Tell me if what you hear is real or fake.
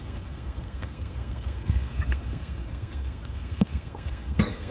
fake